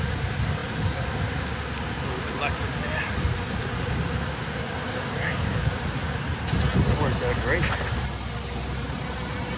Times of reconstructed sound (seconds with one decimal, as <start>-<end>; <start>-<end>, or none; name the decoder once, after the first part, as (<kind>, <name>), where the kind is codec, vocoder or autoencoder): none